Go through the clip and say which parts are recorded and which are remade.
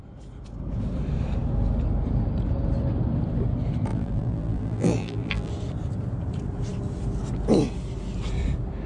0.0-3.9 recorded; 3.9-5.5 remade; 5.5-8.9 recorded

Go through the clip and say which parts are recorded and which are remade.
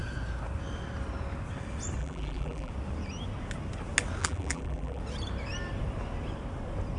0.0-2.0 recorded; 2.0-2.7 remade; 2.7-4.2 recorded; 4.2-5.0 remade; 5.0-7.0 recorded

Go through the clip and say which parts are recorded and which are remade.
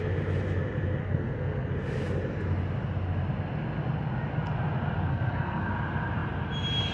0.0-1.0 recorded; 1.0-1.7 remade; 1.7-5.1 recorded; 5.1-5.7 remade; 5.7-6.9 recorded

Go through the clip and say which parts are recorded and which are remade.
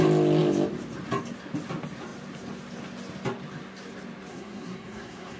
0.0-4.3 recorded; 4.3-5.4 remade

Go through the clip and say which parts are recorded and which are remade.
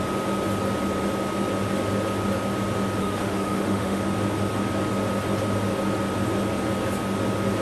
0.0-3.0 recorded; 3.0-4.0 remade; 4.0-7.6 recorded